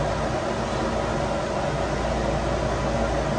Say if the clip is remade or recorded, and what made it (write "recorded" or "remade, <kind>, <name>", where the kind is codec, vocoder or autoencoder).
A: recorded